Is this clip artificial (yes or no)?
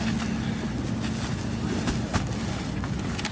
no